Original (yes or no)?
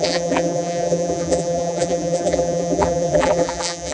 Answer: no